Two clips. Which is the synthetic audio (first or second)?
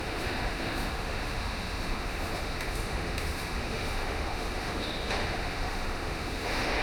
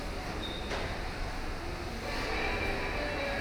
first